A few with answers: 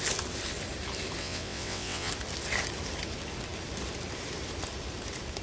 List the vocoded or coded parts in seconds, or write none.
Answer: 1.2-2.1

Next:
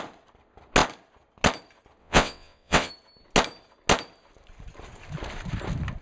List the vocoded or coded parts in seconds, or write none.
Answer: 2.0-2.9

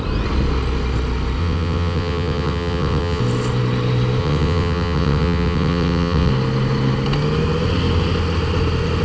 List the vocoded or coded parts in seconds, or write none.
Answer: 1.4-3.2; 4.2-6.3

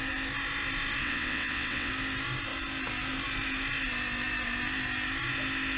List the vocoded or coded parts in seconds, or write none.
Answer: 1.0-1.9

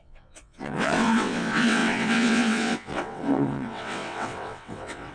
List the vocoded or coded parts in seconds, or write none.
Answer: 0.0-5.1